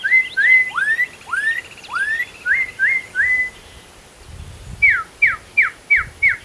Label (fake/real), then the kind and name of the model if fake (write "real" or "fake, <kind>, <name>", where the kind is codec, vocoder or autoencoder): real